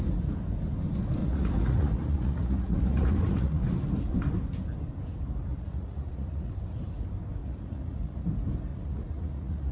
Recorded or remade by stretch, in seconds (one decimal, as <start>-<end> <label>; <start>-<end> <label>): 0.0-1.2 recorded; 1.2-3.6 remade; 3.6-5.5 recorded; 5.5-6.5 remade; 6.5-7.4 recorded; 7.4-8.2 remade; 8.2-8.7 recorded; 8.7-9.7 remade